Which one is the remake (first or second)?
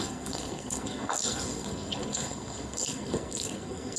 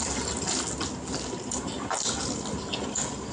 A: first